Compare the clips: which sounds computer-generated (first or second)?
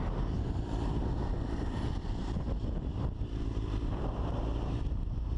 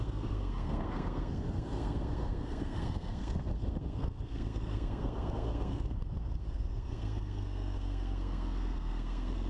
second